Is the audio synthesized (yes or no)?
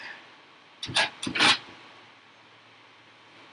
no